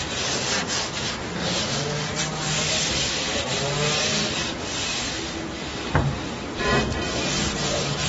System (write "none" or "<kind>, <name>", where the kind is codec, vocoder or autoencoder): none